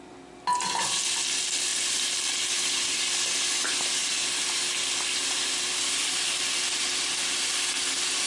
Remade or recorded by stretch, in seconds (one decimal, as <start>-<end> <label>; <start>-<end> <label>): 0.0-8.3 recorded